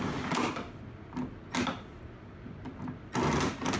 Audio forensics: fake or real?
real